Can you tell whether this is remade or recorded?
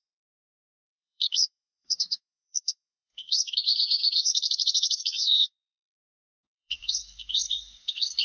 remade